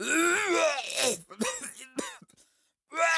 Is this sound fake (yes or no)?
no